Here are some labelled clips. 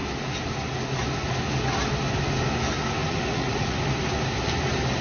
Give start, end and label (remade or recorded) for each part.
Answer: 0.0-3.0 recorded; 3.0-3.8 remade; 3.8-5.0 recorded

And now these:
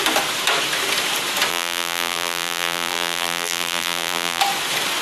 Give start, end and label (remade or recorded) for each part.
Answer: 0.0-1.5 recorded; 1.5-4.4 remade; 4.4-5.0 recorded

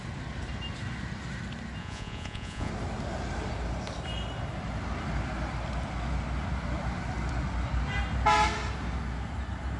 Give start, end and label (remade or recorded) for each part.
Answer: 0.0-1.8 recorded; 1.8-2.7 remade; 2.7-9.8 recorded

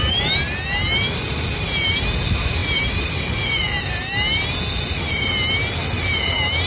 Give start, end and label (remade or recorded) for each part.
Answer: 0.0-6.7 recorded

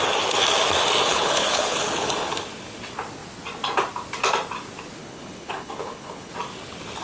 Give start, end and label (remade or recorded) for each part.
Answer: 0.0-1.1 recorded; 1.1-2.3 remade; 2.3-5.0 recorded; 5.0-6.3 remade; 6.3-7.0 recorded

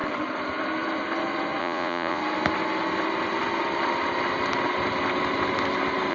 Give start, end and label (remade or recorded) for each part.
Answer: 0.0-1.6 recorded; 1.6-2.2 remade; 2.2-6.1 recorded